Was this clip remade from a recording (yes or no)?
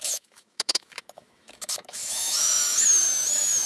yes